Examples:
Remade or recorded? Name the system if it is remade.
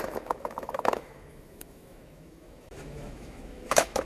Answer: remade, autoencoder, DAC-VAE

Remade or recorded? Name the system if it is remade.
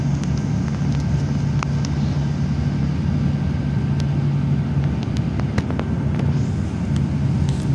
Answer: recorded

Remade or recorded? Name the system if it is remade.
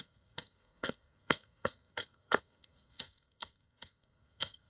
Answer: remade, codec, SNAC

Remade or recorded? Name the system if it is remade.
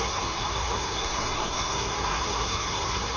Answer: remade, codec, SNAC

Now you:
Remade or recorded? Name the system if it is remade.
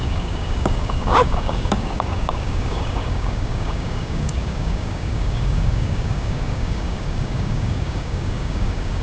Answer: remade, codec, DAC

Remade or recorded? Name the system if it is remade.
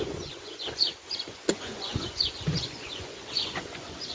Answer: remade, vocoder, Vocos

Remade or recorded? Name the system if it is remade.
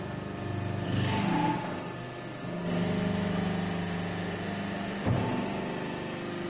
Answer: recorded